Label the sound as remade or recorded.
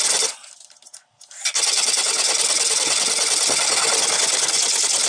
recorded